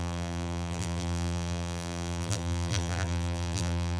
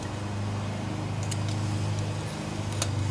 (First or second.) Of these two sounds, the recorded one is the second